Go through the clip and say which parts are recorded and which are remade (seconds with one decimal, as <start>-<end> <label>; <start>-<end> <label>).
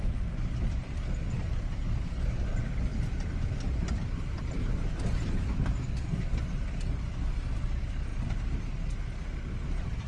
0.0-10.1 recorded